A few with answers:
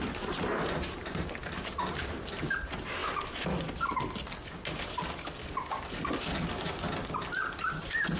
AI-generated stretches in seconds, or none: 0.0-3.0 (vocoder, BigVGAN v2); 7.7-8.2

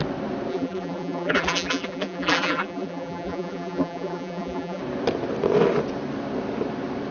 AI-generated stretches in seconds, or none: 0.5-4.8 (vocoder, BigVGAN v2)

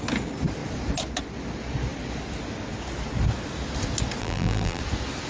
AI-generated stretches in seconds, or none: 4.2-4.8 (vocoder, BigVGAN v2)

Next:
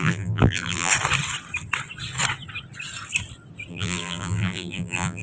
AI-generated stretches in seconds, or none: 0.0-0.9 (vocoder, BigVGAN v2); 3.7-5.2

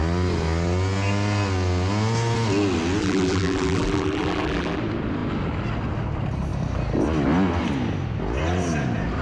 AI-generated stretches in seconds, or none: 3.0-4.8 (vocoder, BigVGAN v2)